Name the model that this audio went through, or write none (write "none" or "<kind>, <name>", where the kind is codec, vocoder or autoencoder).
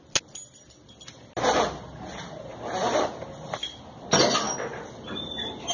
none